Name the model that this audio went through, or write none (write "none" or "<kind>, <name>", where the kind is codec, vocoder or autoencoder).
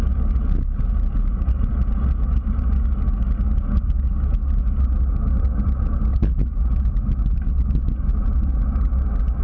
none